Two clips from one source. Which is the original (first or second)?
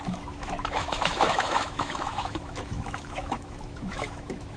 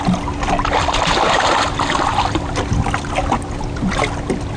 second